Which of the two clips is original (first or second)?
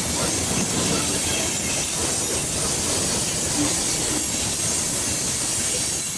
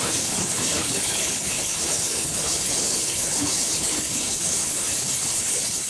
first